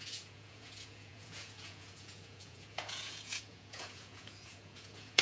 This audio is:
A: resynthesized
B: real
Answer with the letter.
A